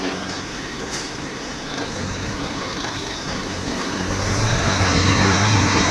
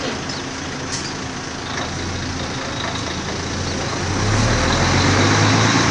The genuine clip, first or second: second